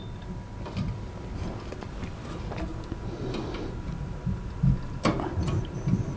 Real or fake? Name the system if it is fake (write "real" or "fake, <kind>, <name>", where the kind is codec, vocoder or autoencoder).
real